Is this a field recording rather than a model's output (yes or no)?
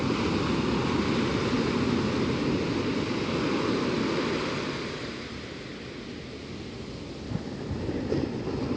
yes